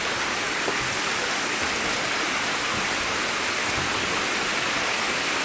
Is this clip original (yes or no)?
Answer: yes